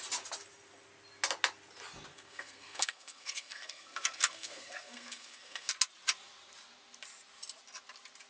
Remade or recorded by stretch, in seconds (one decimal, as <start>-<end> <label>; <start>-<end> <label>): 0.0-2.1 recorded; 2.1-5.7 remade; 5.7-8.3 recorded